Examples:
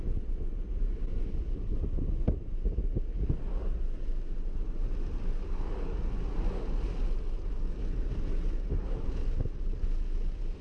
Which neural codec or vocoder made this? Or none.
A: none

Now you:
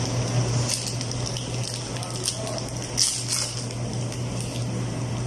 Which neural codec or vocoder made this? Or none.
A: none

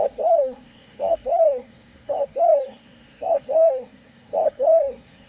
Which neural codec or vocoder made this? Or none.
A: codec, SNAC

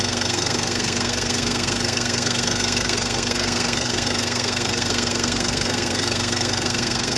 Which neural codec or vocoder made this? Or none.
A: codec, SNAC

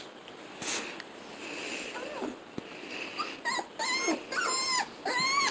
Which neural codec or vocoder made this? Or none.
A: none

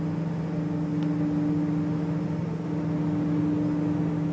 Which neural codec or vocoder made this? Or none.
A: none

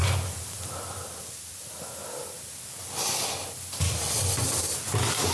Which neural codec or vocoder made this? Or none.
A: none